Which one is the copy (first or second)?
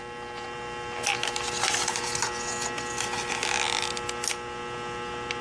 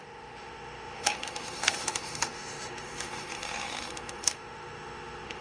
second